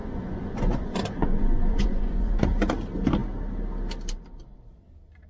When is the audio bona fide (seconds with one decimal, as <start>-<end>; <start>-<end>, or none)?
2.4-5.3